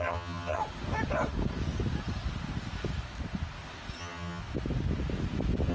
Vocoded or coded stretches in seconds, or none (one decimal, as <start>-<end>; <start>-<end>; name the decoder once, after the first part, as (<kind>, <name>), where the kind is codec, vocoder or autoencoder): 0.0-0.6 (vocoder, HiFi-GAN); 4.0-4.4